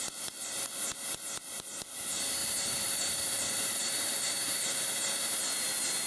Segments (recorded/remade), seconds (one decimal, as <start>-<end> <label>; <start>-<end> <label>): 0.0-2.4 recorded; 2.4-5.0 remade; 5.0-6.1 recorded